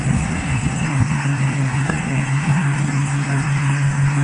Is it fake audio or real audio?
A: fake